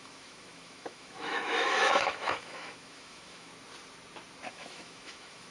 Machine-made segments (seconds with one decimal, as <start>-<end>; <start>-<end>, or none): 0.0-3.5; 4.5-5.5